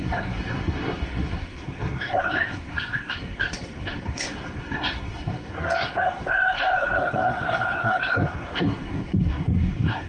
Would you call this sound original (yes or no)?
no